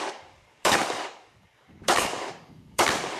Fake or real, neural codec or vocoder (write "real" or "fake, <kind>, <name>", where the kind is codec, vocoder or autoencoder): fake, codec, DAC